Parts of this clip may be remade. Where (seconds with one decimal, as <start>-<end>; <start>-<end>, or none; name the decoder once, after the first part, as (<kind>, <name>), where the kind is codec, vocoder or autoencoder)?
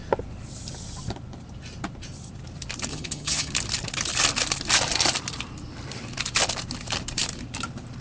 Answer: 2.9-3.5 (vocoder, HiFi-GAN)